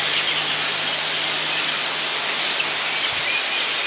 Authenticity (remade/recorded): recorded